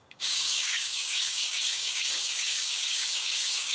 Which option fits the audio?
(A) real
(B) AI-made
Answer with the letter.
B